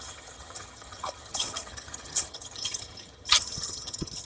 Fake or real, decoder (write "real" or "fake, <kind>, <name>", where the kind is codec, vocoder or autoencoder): fake, vocoder, HiFi-GAN